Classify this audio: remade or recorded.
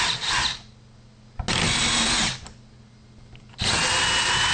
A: recorded